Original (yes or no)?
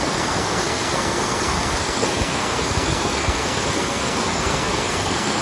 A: no